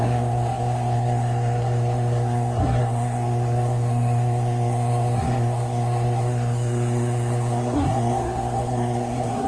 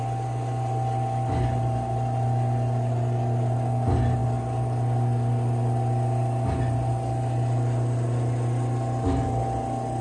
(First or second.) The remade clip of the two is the first